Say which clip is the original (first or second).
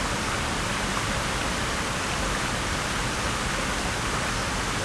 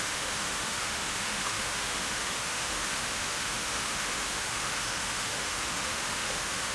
first